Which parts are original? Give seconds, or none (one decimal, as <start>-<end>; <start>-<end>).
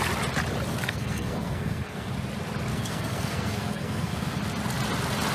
0.0-0.7; 2.1-2.7; 4.4-5.3